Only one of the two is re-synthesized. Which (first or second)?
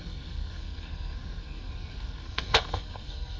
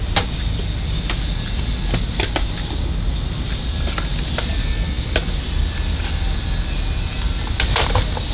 first